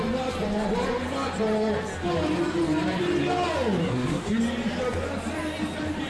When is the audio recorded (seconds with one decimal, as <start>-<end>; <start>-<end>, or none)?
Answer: 0.0-3.8; 4.4-6.1